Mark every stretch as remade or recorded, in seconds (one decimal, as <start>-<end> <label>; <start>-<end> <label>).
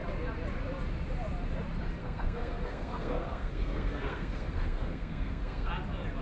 0.0-2.0 recorded; 2.0-5.7 remade; 5.7-6.2 recorded